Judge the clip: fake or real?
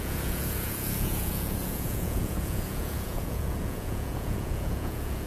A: fake